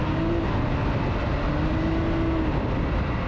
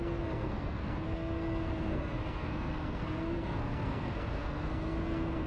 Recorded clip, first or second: first